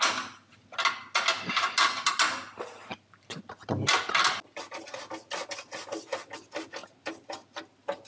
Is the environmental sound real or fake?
real